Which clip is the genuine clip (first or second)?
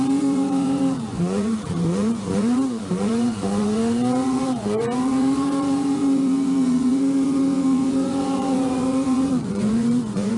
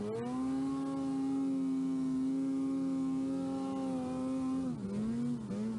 second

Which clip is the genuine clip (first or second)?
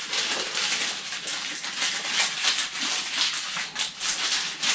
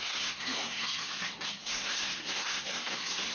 first